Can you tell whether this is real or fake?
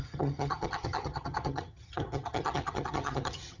fake